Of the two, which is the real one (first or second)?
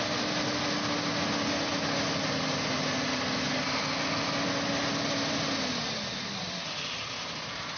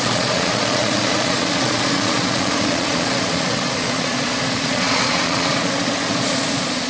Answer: first